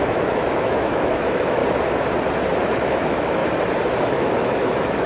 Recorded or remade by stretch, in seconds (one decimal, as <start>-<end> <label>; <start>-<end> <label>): 0.0-1.6 remade; 1.6-2.6 recorded; 2.6-3.4 remade; 3.4-4.0 recorded; 4.0-5.1 remade